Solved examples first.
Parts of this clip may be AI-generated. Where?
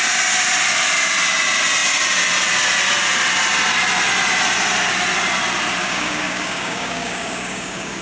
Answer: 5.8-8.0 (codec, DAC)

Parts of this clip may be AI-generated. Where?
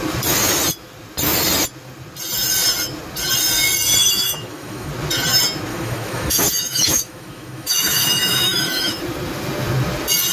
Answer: 4.0-4.9 (autoencoder, DAC-VAE); 5.7-9.0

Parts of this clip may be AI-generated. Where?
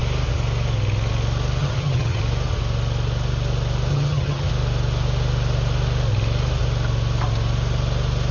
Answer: 1.6-2.2 (vocoder, HiFi-GAN); 3.9-4.5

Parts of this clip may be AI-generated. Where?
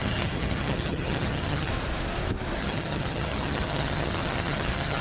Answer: 0.0-1.7 (vocoder, HiFi-GAN); 2.6-5.0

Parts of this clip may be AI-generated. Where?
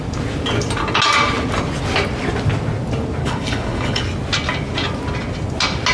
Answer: 3.2-4.0 (codec, HILCodec)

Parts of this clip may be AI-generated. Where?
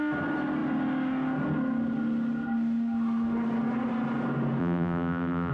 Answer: 4.6-5.5 (vocoder, BigVGAN v2)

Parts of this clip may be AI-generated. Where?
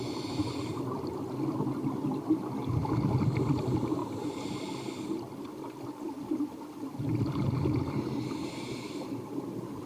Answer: none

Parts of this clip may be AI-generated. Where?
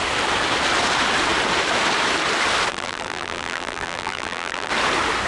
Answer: 2.7-4.7 (vocoder, BigVGAN v2)